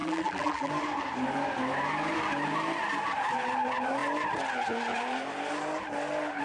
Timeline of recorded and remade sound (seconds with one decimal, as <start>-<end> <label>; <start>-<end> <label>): 0.0-0.7 remade; 0.7-6.4 recorded